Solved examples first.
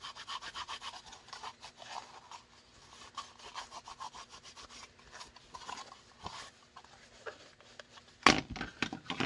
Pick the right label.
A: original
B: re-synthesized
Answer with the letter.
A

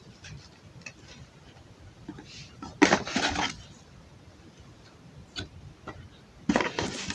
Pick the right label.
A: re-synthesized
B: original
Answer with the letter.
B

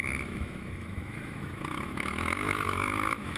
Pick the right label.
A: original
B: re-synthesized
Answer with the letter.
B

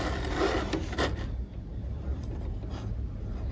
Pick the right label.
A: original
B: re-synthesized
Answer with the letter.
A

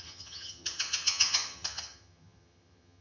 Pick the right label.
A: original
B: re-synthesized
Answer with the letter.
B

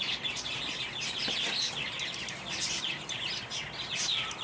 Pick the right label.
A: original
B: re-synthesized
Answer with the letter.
A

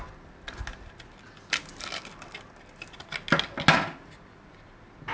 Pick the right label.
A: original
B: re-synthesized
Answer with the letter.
A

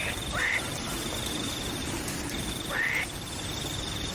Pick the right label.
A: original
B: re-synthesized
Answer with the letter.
B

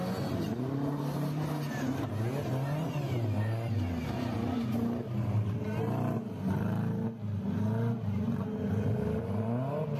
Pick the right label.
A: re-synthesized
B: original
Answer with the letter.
B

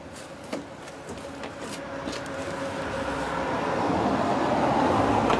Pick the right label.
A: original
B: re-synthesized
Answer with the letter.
A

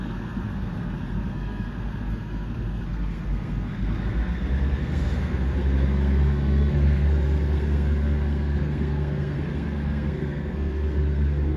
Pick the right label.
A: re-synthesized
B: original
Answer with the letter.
A